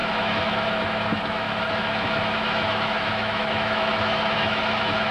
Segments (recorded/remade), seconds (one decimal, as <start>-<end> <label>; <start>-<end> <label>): 0.0-5.1 remade